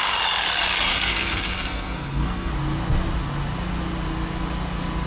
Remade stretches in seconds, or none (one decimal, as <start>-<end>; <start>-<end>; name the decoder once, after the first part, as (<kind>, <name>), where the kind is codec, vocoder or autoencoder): 0.9-2.5 (codec, SNAC)